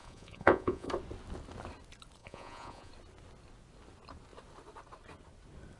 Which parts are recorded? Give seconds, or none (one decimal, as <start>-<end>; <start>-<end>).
0.9-2.2; 2.9-5.8